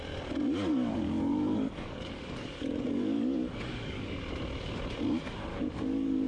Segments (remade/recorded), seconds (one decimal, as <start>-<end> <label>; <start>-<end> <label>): 0.0-0.7 recorded; 0.7-4.2 remade; 4.2-5.5 recorded; 5.5-6.3 remade